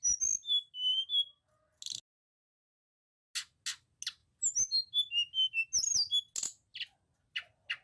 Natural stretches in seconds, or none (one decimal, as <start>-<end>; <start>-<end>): 0.0-7.8